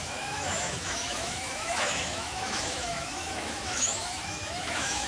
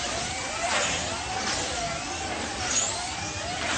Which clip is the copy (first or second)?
first